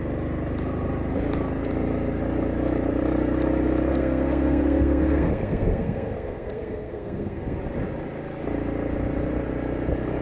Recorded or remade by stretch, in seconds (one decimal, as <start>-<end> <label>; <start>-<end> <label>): 0.0-3.9 recorded; 3.9-7.6 remade; 7.6-10.2 recorded